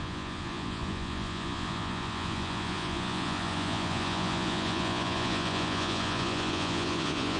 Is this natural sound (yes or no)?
no